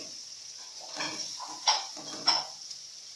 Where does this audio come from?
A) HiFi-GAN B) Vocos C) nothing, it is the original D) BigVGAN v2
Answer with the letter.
B